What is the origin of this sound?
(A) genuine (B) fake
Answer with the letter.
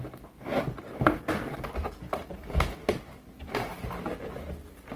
A